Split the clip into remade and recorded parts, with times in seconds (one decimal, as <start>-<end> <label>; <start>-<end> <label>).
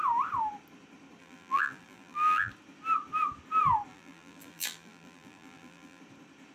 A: 0.0-1.2 recorded; 1.2-2.5 remade; 2.5-3.9 recorded; 3.9-6.0 remade; 6.0-6.5 recorded